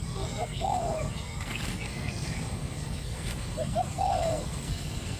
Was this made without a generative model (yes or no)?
no